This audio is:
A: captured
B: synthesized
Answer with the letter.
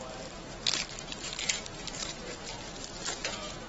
B